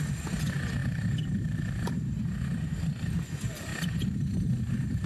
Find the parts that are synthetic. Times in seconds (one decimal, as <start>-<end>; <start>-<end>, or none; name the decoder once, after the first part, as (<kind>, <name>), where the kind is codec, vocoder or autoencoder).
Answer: none